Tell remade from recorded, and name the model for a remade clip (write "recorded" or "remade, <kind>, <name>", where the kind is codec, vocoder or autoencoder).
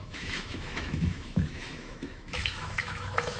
remade, autoencoder, DAC-VAE